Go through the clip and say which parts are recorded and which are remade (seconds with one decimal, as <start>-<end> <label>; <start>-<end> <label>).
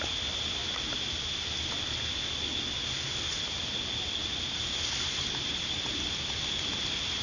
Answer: 0.0-7.2 recorded